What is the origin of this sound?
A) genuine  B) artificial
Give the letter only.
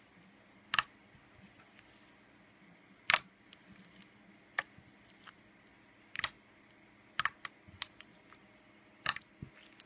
A